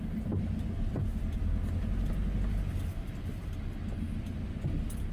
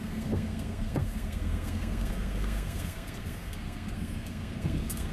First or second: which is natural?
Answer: first